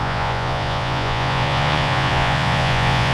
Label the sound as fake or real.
fake